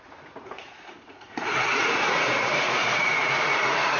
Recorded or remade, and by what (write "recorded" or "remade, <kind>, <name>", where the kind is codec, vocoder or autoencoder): remade, vocoder, Vocos